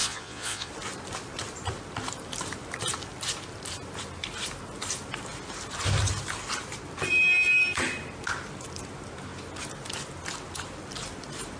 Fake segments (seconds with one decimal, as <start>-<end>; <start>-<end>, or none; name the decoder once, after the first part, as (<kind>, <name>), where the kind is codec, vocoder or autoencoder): 0.0-0.7 (vocoder, Vocos)

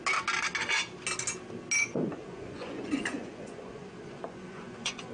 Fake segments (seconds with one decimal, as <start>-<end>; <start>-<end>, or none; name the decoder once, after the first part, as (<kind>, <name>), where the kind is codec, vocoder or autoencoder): 1.8-5.1 (vocoder, Vocos)

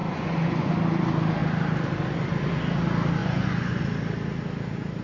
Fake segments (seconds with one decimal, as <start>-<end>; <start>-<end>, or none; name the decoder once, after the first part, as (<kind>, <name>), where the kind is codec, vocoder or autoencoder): 0.0-0.7 (vocoder, Vocos); 3.2-3.8

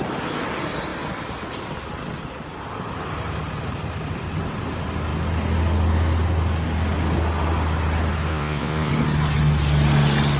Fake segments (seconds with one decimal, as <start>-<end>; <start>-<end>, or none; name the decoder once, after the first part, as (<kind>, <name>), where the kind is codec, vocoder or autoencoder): 8.3-8.9 (vocoder, Vocos)

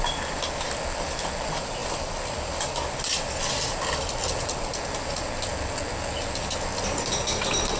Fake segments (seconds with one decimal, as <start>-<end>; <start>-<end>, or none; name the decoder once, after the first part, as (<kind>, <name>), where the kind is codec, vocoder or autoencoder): none

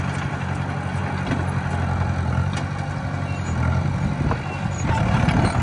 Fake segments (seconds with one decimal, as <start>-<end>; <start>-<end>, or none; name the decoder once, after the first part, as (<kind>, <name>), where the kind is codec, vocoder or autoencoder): none

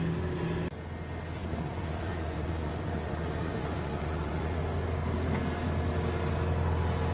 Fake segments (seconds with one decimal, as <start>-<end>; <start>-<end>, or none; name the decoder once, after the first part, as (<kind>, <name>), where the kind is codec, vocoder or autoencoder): 1.4-4.6 (vocoder, Vocos)

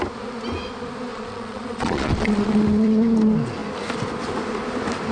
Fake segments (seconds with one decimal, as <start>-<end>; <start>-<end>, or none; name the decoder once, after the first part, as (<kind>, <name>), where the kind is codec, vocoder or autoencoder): 1.1-2.5 (vocoder, Vocos)